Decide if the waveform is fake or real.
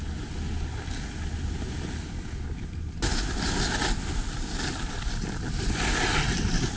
real